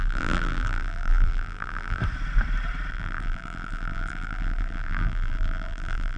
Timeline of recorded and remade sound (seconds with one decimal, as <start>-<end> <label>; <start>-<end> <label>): 0.0-2.0 remade; 2.0-2.9 recorded; 2.9-6.2 remade